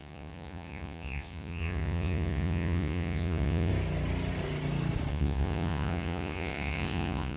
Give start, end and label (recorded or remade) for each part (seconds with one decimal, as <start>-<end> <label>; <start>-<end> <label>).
0.0-3.7 remade; 3.7-5.1 recorded; 5.1-7.4 remade